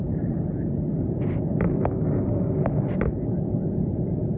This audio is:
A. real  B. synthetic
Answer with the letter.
A